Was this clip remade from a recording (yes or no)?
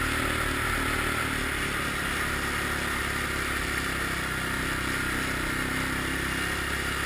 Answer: no